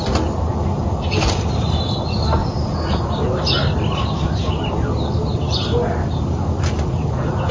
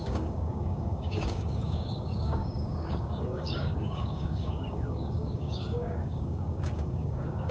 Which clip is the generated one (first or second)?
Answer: second